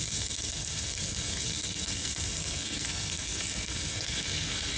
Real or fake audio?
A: fake